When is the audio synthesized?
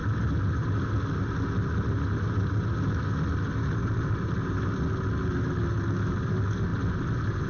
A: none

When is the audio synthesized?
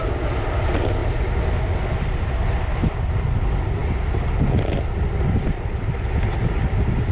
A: none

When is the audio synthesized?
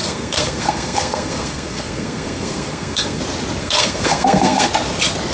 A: 0.0-3.2 (codec, SNAC); 3.6-4.7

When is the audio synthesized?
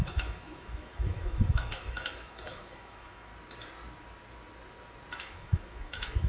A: 0.0-3.3 (autoencoder, DAC-VAE); 5.2-6.3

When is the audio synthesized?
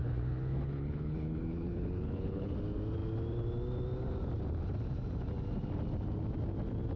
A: 0.0-2.5 (codec, HILCodec)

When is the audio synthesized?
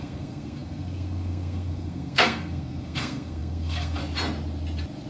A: 0.0-4.0 (codec, SNAC)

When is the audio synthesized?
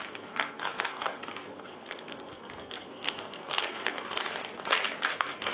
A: 0.0-4.2 (codec, SNAC); 5.1-5.5